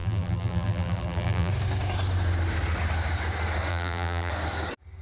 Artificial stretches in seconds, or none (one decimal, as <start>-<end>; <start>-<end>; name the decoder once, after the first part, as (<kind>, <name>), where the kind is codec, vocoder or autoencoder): 0.0-1.5 (vocoder, BigVGAN v2); 3.7-4.3